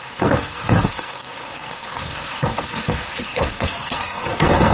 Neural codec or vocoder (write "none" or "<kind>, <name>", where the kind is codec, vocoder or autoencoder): codec, SNAC